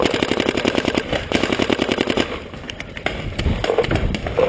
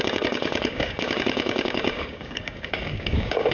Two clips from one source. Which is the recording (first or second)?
first